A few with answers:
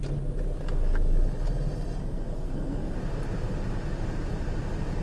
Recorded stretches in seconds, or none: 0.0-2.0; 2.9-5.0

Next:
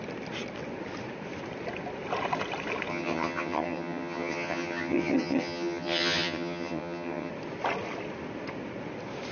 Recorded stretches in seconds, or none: 0.0-2.9; 7.3-9.3

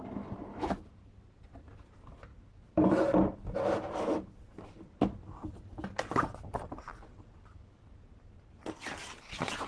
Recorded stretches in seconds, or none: 0.0-2.3; 2.9-9.7

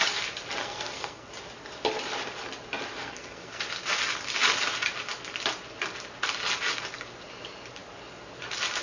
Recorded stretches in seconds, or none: 0.0-0.6; 1.3-2.9; 3.6-8.8

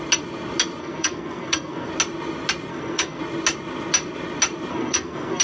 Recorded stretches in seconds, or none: 0.0-0.8; 1.9-2.7; 3.2-4.7